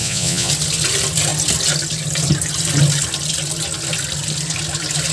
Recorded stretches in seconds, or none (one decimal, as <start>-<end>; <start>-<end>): 0.5-5.1